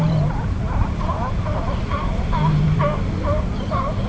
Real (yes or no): no